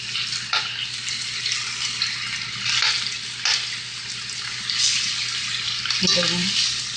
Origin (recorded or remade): recorded